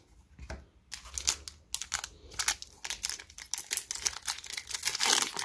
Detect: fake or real real